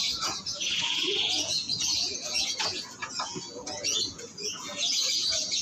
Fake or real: fake